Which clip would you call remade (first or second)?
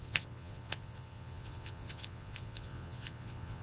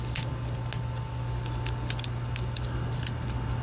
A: first